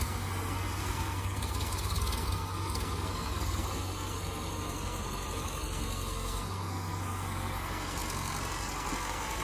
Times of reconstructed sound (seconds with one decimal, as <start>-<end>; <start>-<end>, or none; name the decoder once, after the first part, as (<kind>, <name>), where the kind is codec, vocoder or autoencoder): 0.0-9.4 (codec, SNAC)